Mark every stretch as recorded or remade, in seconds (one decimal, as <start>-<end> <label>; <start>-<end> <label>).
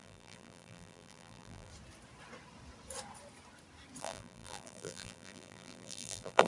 0.0-1.7 remade; 1.7-4.0 recorded; 4.0-6.5 remade